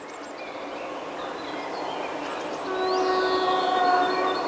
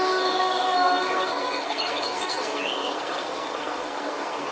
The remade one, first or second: second